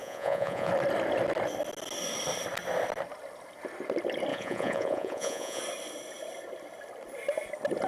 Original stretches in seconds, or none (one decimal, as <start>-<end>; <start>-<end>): 0.7-4.3; 5.6-7.9